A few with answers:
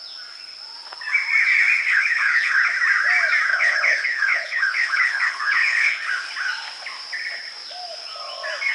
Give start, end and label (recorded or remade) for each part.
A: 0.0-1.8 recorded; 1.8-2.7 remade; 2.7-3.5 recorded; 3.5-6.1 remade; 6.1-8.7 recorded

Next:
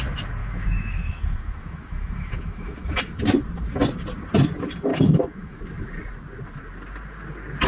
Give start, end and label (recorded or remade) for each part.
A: 0.0-0.4 recorded; 0.4-3.0 remade; 3.0-4.9 recorded; 4.9-5.6 remade; 5.6-7.7 recorded

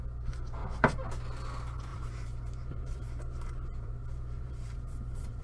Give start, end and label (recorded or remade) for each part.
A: 0.0-0.6 recorded; 0.6-1.1 remade; 1.1-1.9 recorded; 1.9-5.4 remade

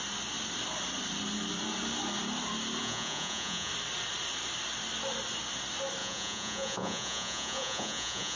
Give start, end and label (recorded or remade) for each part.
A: 0.0-2.8 recorded; 2.8-3.7 remade; 3.7-6.0 recorded; 6.0-8.4 remade

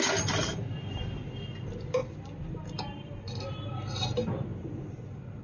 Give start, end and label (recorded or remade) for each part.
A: 0.0-2.0 recorded; 2.0-3.9 remade; 3.9-5.4 recorded

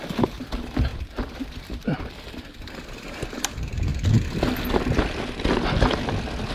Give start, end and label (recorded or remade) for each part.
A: 0.0-0.9 recorded; 0.9-2.7 remade; 2.7-6.5 recorded